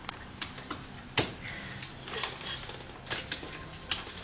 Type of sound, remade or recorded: recorded